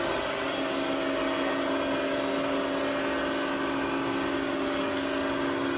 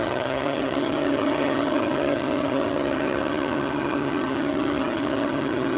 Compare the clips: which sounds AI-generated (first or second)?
second